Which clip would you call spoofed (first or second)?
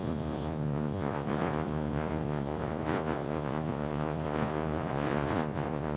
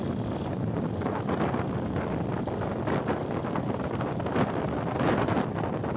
first